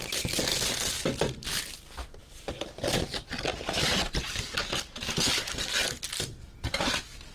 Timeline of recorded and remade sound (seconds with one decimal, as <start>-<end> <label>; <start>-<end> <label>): 0.0-7.3 recorded